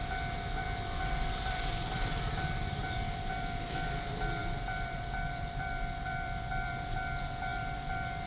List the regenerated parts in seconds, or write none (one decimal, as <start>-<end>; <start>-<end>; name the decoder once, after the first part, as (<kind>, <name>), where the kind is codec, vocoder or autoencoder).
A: 0.6-8.3 (vocoder, BigVGAN v2)